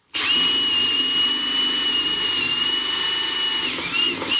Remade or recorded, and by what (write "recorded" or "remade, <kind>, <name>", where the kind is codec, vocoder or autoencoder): recorded